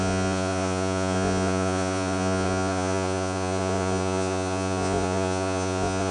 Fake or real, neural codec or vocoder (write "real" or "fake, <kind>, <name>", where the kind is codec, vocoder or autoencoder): fake, vocoder, Vocos